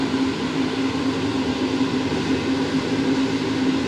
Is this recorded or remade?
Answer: remade